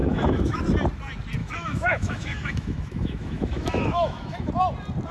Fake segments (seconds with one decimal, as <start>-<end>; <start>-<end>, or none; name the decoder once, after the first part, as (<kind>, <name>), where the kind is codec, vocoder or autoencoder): 0.0-0.6 (autoencoder, DAC-VAE); 1.4-4.5